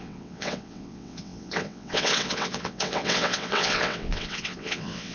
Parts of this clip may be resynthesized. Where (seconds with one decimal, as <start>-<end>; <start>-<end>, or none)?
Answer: 0.0-5.1